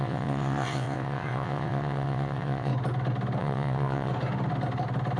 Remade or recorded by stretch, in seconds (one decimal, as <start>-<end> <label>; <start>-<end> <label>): 0.0-2.7 remade; 2.7-3.4 recorded; 3.4-4.1 remade; 4.1-5.2 recorded